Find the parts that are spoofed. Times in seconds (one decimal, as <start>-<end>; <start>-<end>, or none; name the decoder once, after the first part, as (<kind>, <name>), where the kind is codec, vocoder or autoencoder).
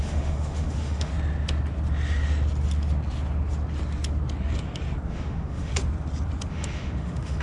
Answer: 0.0-1.1 (autoencoder, DAC-VAE); 5.1-5.7; 6.5-7.4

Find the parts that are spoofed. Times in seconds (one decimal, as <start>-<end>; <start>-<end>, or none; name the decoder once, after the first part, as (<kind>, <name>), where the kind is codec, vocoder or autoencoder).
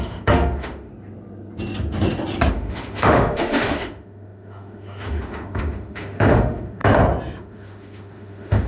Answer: 0.0-0.9 (autoencoder, DAC-VAE); 2.5-6.8; 7.4-8.7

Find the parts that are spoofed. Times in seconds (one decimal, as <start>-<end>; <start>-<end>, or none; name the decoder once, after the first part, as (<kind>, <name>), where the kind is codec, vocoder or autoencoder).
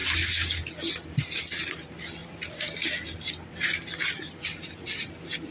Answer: none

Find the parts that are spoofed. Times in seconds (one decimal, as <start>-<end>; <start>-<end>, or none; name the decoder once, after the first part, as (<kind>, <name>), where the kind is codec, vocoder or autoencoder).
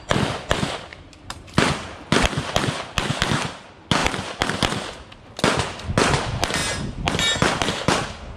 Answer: 0.9-1.7 (vocoder, BigVGAN v2)